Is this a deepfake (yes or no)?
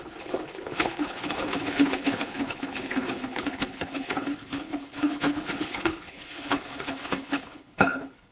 yes